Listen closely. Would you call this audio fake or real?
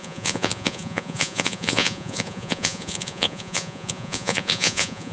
fake